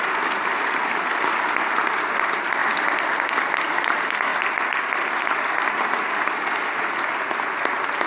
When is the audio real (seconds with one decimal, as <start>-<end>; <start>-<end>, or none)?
0.0-8.1